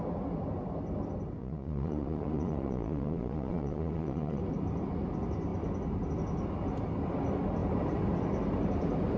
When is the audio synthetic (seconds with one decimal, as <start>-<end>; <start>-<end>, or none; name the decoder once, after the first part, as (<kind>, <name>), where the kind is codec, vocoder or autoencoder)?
1.4-4.4 (vocoder, Vocos)